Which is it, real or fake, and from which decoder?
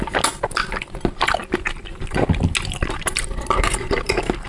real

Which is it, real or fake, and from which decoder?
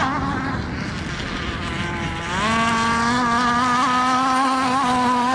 real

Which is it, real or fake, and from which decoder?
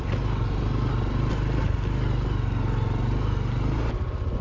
real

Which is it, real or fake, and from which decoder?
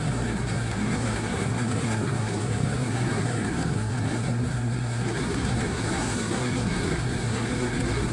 fake, codec, SNAC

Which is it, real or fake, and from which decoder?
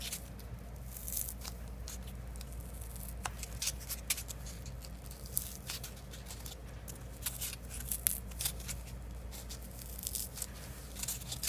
real